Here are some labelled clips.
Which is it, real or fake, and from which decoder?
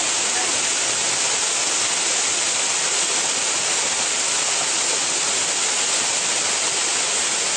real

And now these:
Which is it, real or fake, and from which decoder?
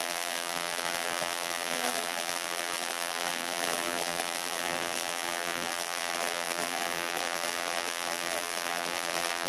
fake, vocoder, BigVGAN v2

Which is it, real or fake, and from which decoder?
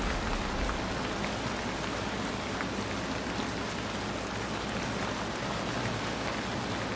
real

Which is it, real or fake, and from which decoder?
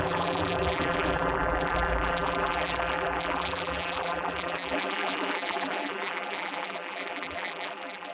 fake, vocoder, BigVGAN v2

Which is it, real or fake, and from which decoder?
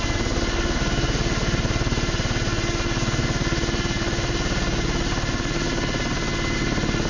real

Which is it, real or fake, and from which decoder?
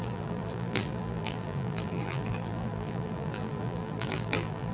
fake, vocoder, BigVGAN v2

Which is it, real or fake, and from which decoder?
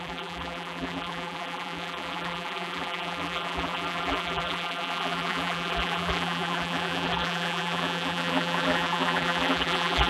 fake, vocoder, BigVGAN v2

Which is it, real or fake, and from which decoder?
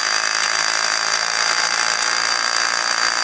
fake, vocoder, BigVGAN v2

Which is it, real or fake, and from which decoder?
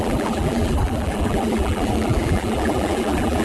fake, vocoder, BigVGAN v2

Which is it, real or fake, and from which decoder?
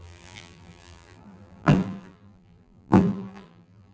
fake, vocoder, BigVGAN v2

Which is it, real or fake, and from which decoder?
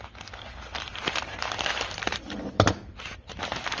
fake, vocoder, BigVGAN v2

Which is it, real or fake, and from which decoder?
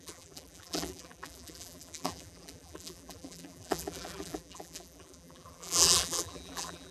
fake, vocoder, BigVGAN v2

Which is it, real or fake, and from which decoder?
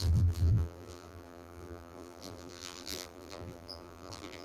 fake, vocoder, BigVGAN v2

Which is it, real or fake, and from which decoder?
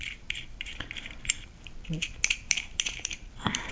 fake, vocoder, BigVGAN v2